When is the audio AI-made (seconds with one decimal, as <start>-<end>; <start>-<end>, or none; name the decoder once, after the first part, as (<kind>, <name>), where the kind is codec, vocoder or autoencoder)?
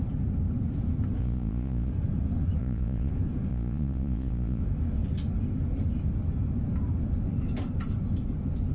1.2-1.9 (vocoder, Vocos); 2.6-3.1; 3.5-4.6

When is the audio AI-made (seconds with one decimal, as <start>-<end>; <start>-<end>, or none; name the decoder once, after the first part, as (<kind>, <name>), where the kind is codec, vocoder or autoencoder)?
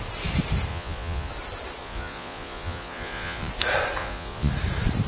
0.7-1.3 (vocoder, Vocos); 1.8-3.5; 4.0-4.5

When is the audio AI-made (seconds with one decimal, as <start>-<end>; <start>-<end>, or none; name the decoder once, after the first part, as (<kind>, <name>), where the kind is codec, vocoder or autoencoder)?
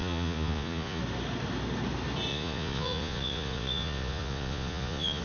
0.0-1.0 (vocoder, Vocos); 2.3-5.2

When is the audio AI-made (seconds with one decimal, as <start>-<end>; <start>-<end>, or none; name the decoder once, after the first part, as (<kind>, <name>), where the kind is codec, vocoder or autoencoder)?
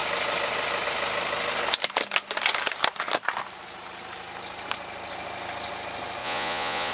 6.2-6.9 (vocoder, Vocos)